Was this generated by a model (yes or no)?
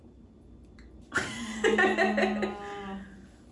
no